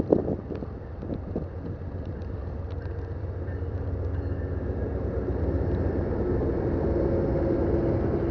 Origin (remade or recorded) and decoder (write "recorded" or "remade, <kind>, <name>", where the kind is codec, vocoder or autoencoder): recorded